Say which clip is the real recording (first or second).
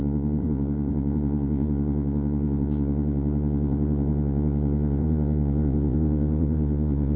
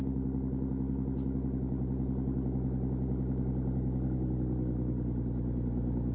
second